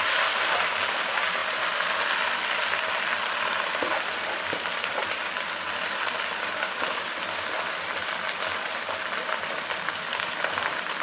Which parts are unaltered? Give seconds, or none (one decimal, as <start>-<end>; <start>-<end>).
0.0-11.0